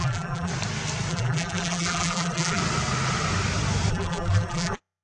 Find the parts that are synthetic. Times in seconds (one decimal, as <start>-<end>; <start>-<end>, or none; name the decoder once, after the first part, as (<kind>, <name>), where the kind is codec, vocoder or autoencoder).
0.0-0.5 (vocoder, BigVGAN v2); 1.1-2.6; 3.9-5.0